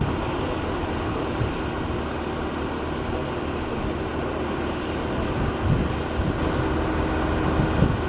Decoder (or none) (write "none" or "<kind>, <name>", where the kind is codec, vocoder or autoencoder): none